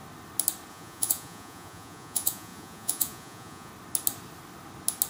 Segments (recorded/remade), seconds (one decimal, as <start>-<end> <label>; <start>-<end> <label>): 0.0-0.7 recorded; 0.7-3.7 remade; 3.7-5.1 recorded